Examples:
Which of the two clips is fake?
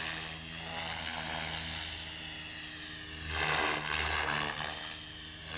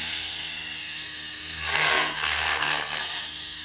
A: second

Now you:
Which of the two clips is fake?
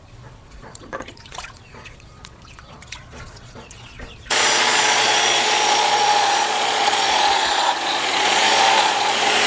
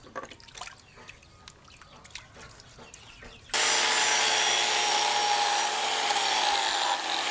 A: first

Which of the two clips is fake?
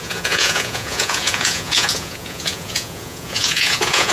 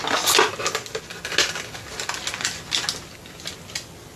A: first